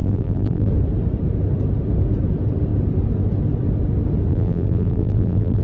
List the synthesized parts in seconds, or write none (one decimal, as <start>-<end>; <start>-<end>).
0.0-0.7; 4.3-5.6